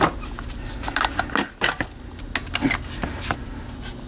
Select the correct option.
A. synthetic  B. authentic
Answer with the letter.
B